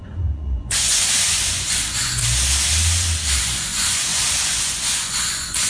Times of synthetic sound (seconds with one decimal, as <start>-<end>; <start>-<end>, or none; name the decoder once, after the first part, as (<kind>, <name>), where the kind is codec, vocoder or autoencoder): 0.0-2.2 (vocoder, Vocos); 3.4-5.7